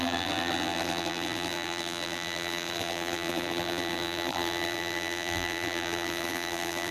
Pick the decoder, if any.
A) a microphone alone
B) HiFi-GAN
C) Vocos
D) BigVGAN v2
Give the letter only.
D